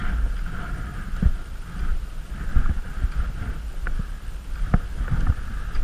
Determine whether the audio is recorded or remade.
recorded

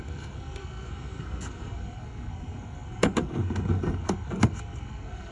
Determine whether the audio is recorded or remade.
remade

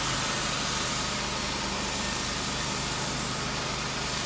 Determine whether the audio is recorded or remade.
recorded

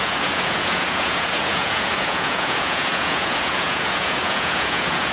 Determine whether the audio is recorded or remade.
remade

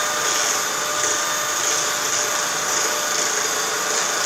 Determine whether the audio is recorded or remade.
recorded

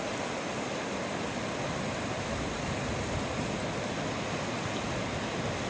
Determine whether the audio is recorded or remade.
recorded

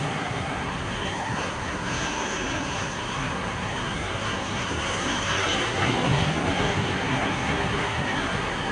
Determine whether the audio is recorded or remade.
remade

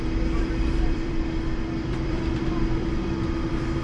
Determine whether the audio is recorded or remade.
remade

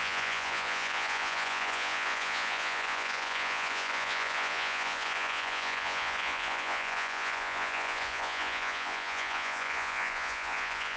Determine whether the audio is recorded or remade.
remade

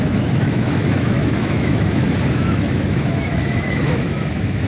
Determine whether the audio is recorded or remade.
remade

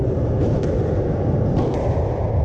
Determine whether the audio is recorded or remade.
recorded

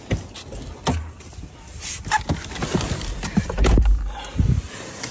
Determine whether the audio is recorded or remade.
recorded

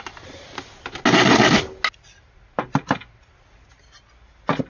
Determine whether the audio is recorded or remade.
recorded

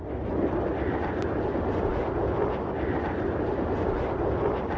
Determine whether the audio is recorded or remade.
recorded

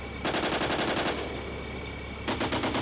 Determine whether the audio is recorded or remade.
recorded